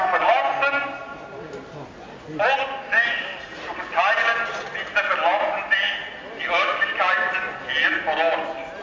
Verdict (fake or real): real